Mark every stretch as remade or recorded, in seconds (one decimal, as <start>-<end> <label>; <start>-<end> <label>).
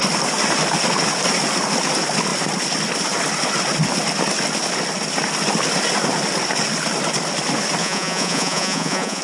0.0-7.8 recorded; 7.8-9.2 remade